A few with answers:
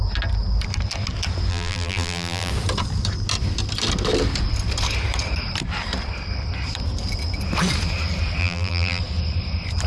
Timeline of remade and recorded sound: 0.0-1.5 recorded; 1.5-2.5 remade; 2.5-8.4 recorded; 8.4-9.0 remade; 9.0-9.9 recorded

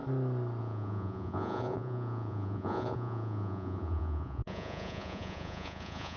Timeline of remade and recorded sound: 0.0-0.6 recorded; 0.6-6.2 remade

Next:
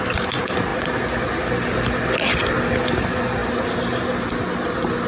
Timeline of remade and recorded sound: 0.0-5.1 recorded

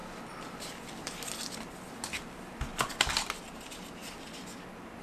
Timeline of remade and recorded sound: 0.0-5.0 recorded